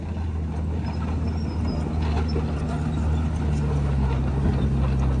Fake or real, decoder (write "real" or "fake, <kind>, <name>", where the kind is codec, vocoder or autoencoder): real